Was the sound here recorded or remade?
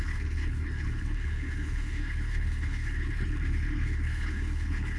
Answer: remade